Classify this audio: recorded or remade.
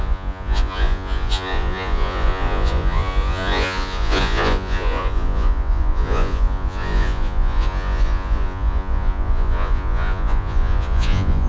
remade